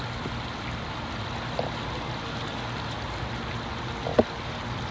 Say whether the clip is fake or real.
real